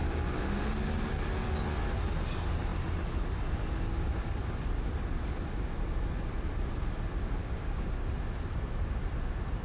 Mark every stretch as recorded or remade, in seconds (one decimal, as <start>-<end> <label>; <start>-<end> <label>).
0.0-7.4 recorded; 7.4-8.1 remade; 8.1-9.6 recorded